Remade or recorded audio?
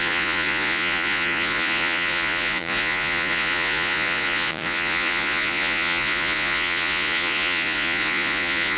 remade